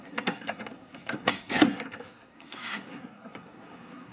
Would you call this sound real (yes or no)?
no